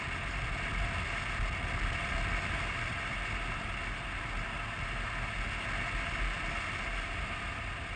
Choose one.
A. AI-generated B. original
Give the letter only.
B